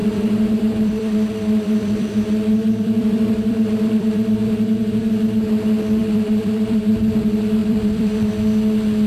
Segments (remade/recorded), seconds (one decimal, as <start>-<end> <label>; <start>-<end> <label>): 0.0-5.1 remade; 5.1-6.0 recorded; 6.0-6.9 remade; 6.9-7.6 recorded; 7.6-8.3 remade; 8.3-9.1 recorded